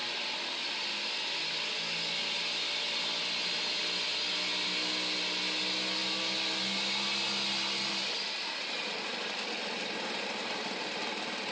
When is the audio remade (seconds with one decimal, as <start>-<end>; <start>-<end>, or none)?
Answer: none

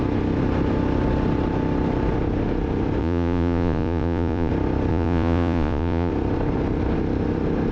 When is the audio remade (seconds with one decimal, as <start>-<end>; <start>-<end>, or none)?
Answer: 3.0-4.5; 4.9-6.1

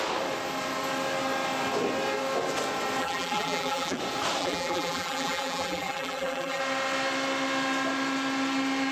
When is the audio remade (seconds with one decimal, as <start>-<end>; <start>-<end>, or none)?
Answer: 3.0-4.0; 4.4-6.6

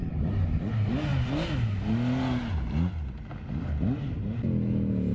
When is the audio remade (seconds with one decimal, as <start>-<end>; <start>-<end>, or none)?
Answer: none

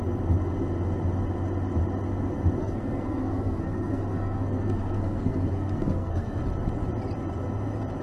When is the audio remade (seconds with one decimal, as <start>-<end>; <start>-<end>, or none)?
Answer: 2.6-6.4